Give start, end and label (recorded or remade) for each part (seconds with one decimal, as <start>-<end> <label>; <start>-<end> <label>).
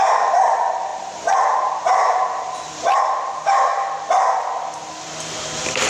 0.0-3.7 remade; 3.7-5.4 recorded; 5.4-5.9 remade